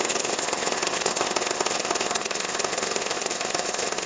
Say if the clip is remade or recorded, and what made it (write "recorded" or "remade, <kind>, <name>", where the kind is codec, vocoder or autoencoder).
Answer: remade, codec, ZipCodec